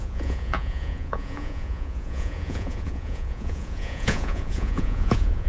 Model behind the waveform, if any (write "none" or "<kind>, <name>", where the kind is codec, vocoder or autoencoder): vocoder, Vocos